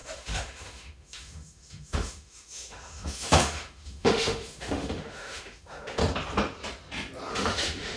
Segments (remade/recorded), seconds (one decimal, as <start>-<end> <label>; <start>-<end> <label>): 0.0-6.0 remade; 6.0-7.3 recorded; 7.3-8.0 remade